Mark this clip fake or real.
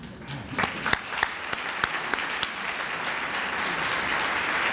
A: real